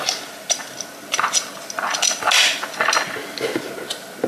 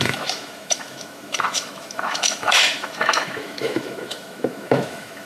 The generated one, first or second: second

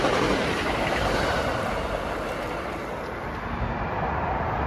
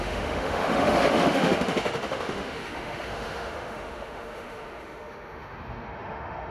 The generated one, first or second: second